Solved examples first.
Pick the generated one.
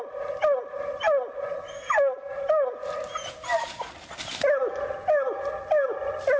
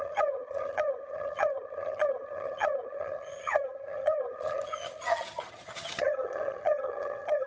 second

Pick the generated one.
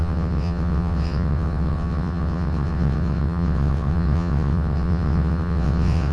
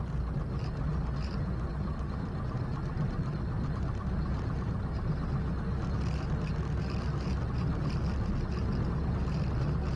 first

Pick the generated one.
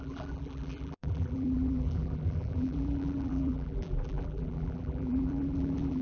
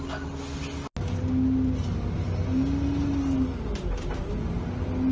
first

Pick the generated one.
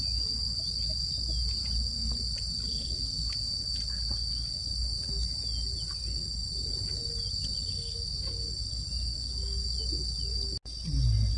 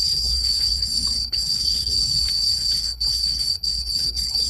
second